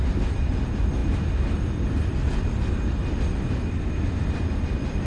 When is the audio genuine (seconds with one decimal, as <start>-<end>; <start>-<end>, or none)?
0.0-5.1